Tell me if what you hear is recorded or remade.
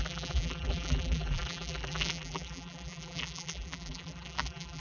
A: remade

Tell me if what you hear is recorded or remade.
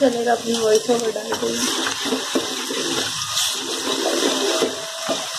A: recorded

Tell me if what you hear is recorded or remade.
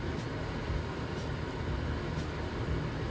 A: remade